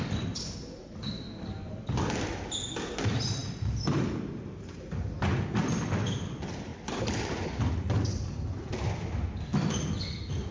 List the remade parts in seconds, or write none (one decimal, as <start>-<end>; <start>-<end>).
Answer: none